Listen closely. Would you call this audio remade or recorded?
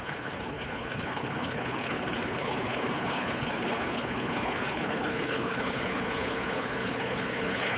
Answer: remade